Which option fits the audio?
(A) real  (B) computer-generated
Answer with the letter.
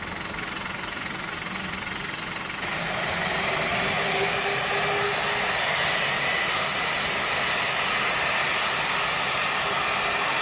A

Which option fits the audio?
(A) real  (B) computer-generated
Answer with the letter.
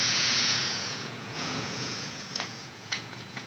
B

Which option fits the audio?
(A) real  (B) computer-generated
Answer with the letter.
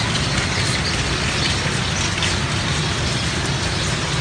A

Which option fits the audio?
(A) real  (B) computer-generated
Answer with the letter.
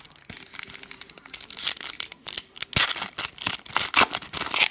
A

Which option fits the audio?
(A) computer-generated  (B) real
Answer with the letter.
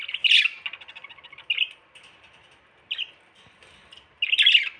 B